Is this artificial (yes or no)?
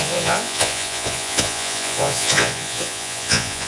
yes